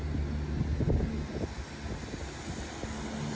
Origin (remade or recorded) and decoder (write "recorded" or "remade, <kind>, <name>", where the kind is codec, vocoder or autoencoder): recorded